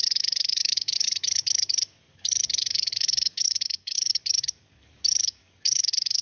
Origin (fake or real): fake